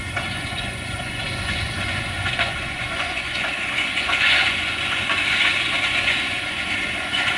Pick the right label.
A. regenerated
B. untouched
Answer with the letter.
A